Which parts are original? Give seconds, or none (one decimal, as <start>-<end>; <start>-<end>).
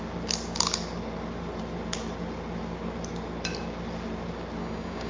0.0-4.6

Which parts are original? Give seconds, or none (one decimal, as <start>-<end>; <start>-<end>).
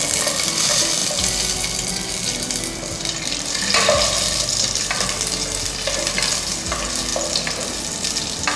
0.0-8.6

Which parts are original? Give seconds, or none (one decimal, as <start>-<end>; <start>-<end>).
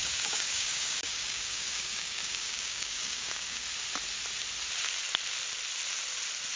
3.7-6.6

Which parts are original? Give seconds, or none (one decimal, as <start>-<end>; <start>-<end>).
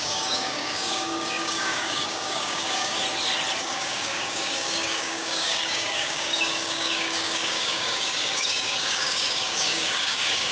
3.0-3.6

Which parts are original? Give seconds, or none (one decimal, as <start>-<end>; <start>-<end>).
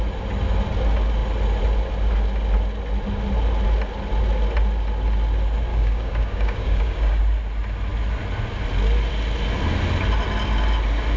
0.0-5.7; 7.2-11.2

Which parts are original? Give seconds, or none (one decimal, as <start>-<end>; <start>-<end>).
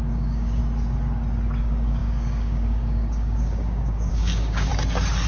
0.6-1.6; 4.7-5.3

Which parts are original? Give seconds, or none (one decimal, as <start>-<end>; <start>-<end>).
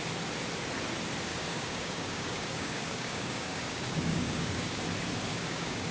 0.0-1.3; 4.8-5.3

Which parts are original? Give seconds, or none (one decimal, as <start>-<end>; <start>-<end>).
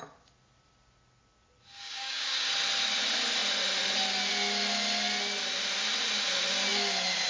0.0-1.8; 2.5-7.3